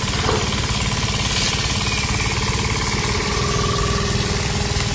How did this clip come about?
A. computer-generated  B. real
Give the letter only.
B